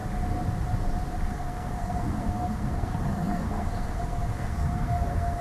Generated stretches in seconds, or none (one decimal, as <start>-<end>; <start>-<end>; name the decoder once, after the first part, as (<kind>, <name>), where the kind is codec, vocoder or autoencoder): 1.3-5.4 (codec, SNAC)